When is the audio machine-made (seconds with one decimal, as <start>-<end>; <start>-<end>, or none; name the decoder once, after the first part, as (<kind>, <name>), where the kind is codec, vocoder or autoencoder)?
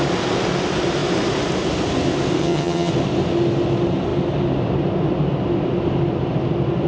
2.4-2.9 (vocoder, HiFi-GAN)